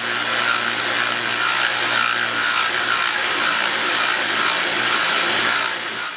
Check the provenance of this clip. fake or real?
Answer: real